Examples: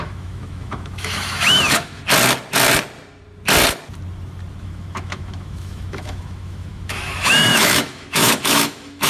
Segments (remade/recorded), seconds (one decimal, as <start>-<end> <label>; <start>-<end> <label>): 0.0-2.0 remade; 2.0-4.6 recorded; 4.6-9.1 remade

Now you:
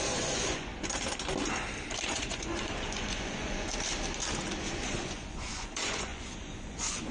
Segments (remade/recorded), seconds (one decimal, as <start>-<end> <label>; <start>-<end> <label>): 0.0-0.7 remade; 0.7-2.1 recorded; 2.1-3.7 remade; 3.7-4.6 recorded; 4.6-7.1 remade

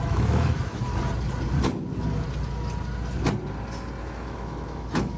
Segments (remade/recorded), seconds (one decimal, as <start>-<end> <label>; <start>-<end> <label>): 0.0-0.9 remade; 0.9-4.0 recorded; 4.0-5.2 remade

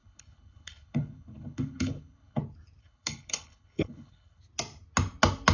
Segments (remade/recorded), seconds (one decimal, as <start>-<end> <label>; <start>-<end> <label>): 0.0-2.4 remade; 2.4-2.8 recorded; 2.8-4.4 remade; 4.4-5.5 recorded

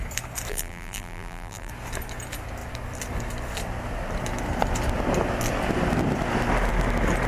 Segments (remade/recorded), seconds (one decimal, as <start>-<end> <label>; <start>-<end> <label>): 0.0-0.5 recorded; 0.5-1.7 remade; 1.7-7.3 recorded